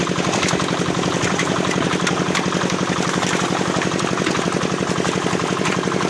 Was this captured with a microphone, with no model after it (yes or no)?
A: no